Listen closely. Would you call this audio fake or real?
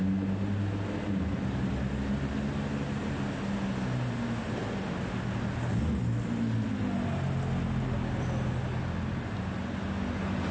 real